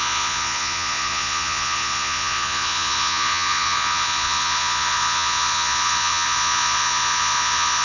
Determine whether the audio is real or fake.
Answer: fake